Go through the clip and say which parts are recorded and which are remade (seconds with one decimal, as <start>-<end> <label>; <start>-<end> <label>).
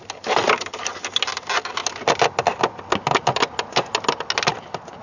0.0-5.0 recorded